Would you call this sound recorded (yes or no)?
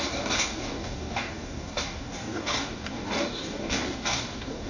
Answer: no